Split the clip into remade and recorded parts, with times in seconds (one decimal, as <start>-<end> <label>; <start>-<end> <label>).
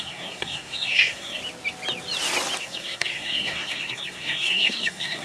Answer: 0.0-1.4 remade; 1.4-2.6 recorded; 2.6-5.2 remade